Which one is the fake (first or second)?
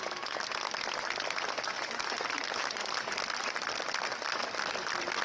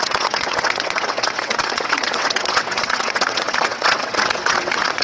second